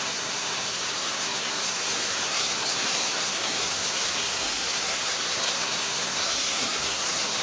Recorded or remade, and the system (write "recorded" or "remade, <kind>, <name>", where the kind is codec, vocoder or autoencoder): remade, codec, SNAC